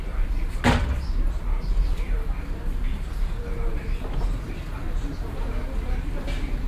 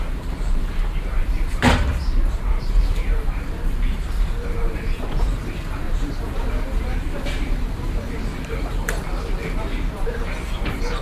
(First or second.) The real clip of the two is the first